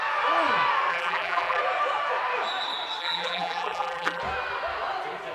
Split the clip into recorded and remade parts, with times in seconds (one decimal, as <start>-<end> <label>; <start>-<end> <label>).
0.0-0.9 recorded; 0.9-1.6 remade; 1.6-3.0 recorded; 3.0-4.2 remade; 4.2-5.3 recorded